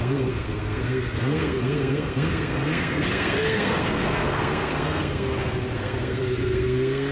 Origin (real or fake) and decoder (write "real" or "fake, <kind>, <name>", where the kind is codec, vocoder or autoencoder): fake, codec, SNAC